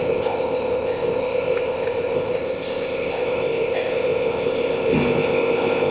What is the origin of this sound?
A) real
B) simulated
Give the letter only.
B